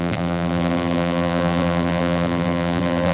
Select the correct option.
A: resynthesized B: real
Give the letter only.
A